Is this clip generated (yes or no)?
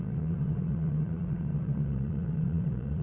yes